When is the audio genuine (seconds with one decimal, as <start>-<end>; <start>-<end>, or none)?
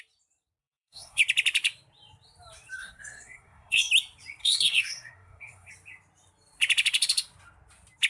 0.0-0.6; 1.2-2.8; 3.9-4.4; 5.7-8.1